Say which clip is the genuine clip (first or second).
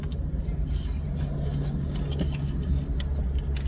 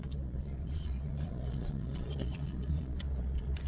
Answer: first